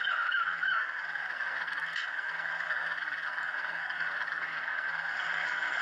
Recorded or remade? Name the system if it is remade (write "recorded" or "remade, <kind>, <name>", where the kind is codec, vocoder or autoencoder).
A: remade, codec, SNAC